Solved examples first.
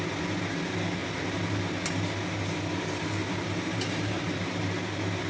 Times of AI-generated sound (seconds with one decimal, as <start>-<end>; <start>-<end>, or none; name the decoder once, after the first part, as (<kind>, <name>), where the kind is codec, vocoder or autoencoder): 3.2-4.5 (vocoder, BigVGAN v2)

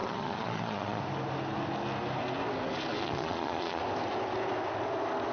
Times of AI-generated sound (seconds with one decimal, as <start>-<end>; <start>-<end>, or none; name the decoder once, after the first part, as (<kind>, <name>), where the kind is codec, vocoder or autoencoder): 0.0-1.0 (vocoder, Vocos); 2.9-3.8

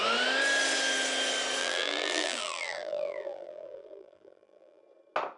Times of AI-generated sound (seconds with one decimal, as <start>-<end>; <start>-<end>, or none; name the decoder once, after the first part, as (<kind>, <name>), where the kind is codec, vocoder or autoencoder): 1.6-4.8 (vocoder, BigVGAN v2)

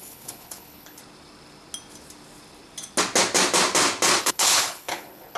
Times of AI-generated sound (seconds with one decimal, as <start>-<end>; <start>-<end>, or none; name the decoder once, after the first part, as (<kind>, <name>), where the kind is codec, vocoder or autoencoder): 0.0-1.0 (codec, HILCodec); 4.2-5.4

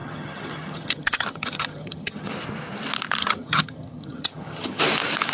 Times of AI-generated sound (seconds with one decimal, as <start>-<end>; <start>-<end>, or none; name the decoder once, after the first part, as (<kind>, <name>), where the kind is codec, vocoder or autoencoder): 0.0-2.3 (vocoder, HiFi-GAN); 3.2-4.8

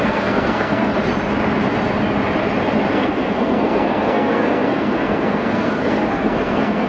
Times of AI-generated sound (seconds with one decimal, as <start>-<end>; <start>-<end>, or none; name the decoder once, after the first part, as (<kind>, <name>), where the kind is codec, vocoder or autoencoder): 0.0-0.9 (codec, SNAC); 2.9-6.9